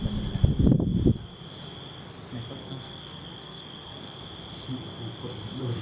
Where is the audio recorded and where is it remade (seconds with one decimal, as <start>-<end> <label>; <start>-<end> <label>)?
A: 0.0-2.6 recorded; 2.6-4.2 remade; 4.2-5.8 recorded